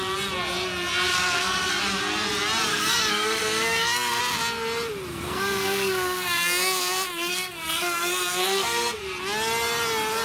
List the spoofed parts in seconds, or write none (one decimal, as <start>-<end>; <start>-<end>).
1.1-1.8; 2.7-4.2; 5.1-9.0